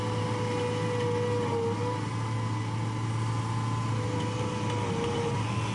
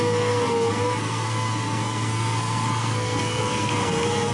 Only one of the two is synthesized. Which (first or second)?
second